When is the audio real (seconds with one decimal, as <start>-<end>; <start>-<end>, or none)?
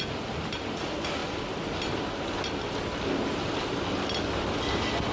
0.0-5.1